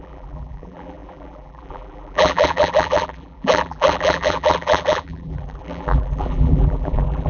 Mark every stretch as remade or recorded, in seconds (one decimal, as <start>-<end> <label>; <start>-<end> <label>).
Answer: 0.0-7.3 remade